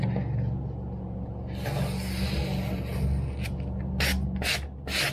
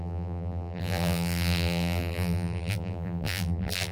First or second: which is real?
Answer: first